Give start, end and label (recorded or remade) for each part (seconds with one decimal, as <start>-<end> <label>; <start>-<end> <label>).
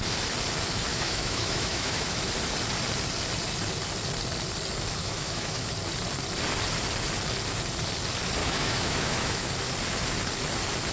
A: 0.0-0.9 recorded; 0.9-2.2 remade; 2.2-5.0 recorded; 5.0-5.7 remade; 5.7-8.4 recorded; 8.4-9.5 remade; 9.5-10.9 recorded